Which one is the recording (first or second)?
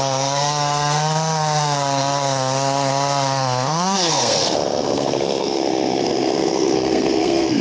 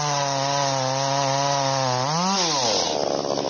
second